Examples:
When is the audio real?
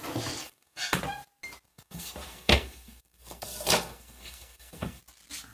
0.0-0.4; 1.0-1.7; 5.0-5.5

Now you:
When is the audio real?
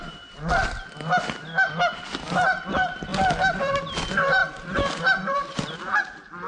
3.1-3.6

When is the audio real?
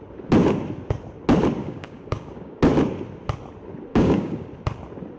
0.0-1.6; 2.6-3.9; 4.5-5.2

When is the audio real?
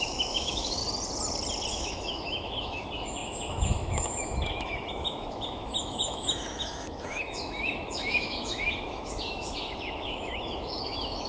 0.8-1.7